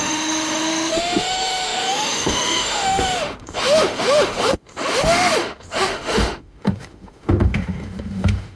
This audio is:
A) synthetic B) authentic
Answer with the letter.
A